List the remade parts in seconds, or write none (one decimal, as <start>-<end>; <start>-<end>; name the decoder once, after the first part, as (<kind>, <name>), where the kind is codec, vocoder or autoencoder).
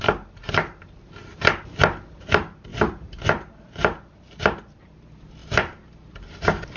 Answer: 2.7-3.7 (vocoder, BigVGAN v2); 5.4-6.8